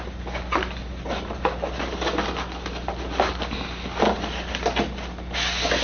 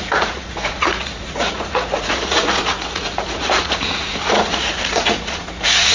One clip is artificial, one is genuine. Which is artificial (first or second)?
second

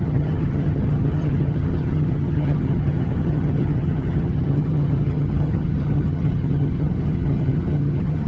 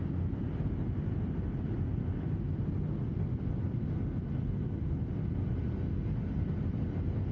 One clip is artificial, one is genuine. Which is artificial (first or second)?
first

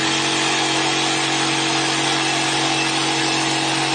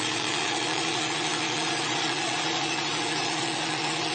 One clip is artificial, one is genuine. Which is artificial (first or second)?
second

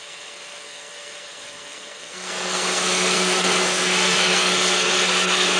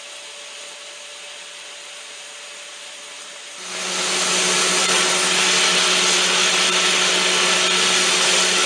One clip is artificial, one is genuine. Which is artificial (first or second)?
first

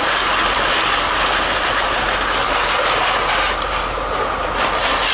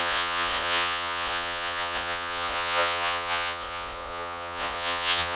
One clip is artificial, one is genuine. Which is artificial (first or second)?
second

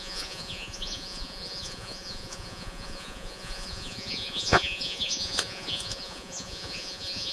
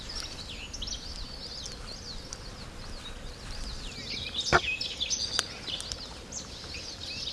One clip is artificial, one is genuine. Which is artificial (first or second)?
first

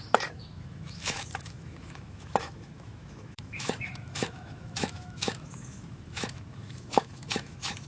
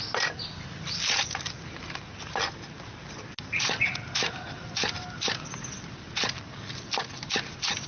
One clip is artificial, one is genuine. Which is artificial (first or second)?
first